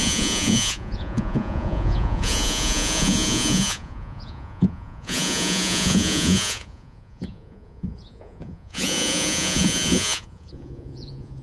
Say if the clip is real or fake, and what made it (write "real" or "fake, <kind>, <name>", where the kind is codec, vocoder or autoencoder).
fake, vocoder, Vocos